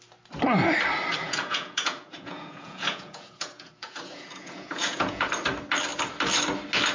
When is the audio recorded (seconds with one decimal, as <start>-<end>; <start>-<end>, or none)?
0.0-1.2; 5.3-6.9